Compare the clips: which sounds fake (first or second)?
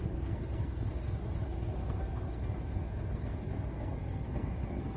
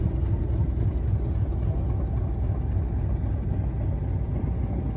first